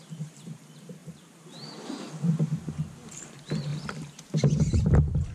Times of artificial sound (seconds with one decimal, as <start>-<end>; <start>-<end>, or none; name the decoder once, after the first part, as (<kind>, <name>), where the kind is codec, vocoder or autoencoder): 0.0-5.3 (vocoder, BigVGAN v2)